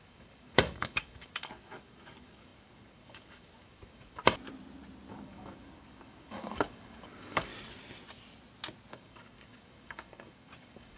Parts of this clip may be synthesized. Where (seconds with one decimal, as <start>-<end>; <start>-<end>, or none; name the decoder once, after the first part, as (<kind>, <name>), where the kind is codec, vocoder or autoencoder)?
0.0-4.2 (codec, DAC); 5.1-7.5; 8.9-11.0